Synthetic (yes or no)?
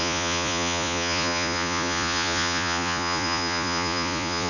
yes